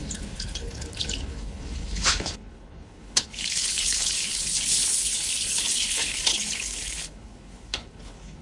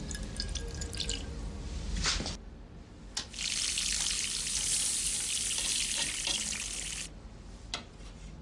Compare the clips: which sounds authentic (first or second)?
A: second